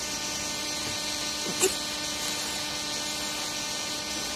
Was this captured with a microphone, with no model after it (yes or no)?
yes